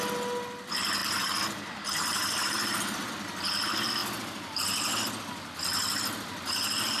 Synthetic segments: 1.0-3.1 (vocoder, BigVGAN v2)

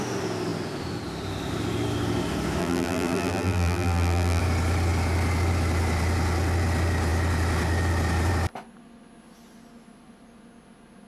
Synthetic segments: 2.6-4.4 (vocoder, BigVGAN v2)

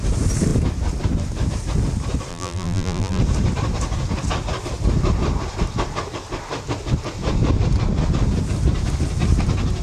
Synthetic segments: 2.3-3.2 (vocoder, BigVGAN v2)

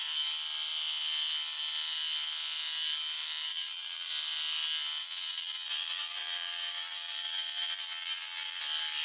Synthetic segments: 3.5-4.1 (vocoder, BigVGAN v2); 5.0-8.6